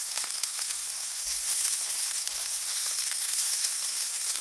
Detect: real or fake fake